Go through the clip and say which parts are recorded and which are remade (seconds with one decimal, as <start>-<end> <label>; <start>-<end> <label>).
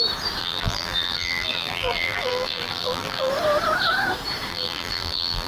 0.0-0.4 recorded; 0.4-3.3 remade; 3.3-4.5 recorded; 4.5-5.5 remade